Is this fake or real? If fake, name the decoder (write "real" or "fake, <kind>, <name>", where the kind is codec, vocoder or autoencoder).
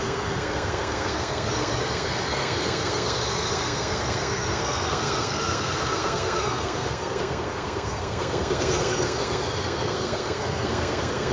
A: fake, codec, SNAC